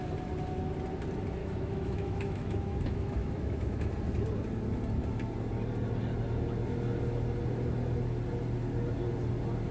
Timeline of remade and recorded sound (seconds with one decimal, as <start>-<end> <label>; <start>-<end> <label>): 0.0-1.4 recorded; 1.4-3.9 remade; 3.9-9.7 recorded